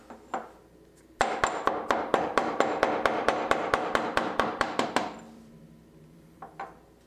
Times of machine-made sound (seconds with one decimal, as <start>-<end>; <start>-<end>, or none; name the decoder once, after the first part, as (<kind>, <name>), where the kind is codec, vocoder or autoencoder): 2.1-6.4 (vocoder, BigVGAN v2)